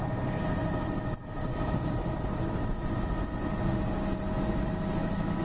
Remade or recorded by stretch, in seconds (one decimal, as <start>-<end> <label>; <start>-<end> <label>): 0.0-5.4 recorded